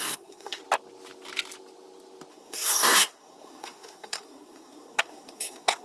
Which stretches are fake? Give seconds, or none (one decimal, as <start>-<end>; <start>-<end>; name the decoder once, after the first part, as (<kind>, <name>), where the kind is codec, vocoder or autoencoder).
0.0-0.6 (codec, SNAC); 2.3-5.8